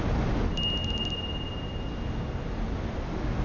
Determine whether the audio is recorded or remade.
recorded